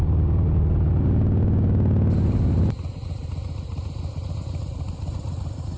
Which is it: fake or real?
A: real